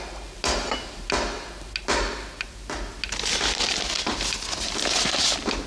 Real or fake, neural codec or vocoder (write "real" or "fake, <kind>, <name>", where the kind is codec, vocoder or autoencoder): real